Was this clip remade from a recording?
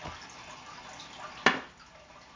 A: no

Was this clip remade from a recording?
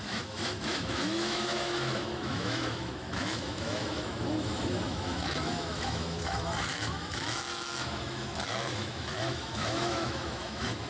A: yes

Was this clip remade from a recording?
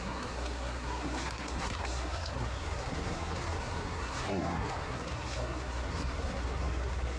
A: yes